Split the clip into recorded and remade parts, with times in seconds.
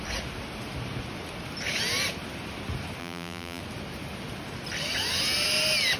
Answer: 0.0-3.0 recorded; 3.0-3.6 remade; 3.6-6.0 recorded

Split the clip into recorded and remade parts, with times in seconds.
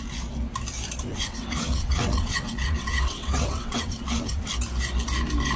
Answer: 0.0-1.1 recorded; 1.1-4.5 remade; 4.5-5.6 recorded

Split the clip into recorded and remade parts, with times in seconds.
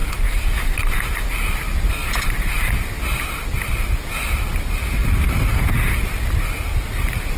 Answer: 0.0-1.2 remade; 1.2-2.0 recorded; 2.0-3.6 remade; 3.6-5.0 recorded; 5.0-5.7 remade; 5.7-7.4 recorded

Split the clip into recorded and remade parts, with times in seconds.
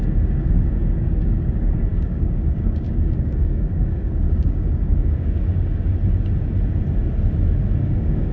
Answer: 0.0-5.9 remade; 5.9-7.8 recorded; 7.8-8.3 remade